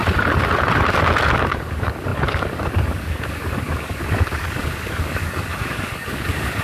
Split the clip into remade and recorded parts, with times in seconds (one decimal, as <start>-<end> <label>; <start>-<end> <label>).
0.0-1.2 recorded; 1.2-6.6 remade